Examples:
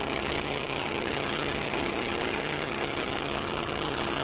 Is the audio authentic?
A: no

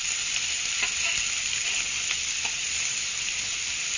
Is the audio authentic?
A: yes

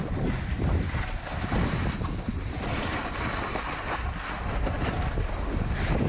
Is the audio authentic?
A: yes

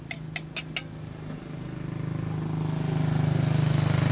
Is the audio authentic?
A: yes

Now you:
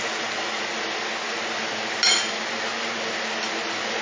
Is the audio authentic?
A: yes